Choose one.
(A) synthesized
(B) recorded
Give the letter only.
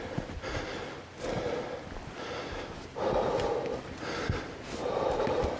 B